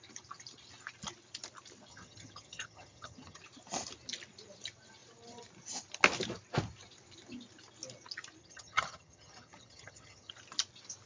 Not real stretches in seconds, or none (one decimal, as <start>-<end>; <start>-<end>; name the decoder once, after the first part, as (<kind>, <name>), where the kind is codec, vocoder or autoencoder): 1.9-3.4 (vocoder, HiFi-GAN); 8.4-10.3